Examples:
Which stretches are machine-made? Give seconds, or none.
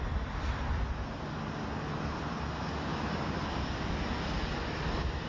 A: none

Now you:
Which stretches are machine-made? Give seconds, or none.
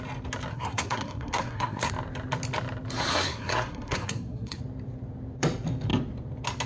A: 0.5-1.9 (codec, SNAC); 3.1-4.6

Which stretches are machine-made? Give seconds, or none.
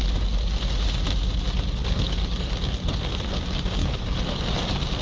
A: 1.8-2.5 (codec, DAC); 3.8-4.4